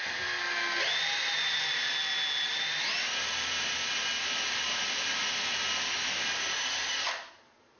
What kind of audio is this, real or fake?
real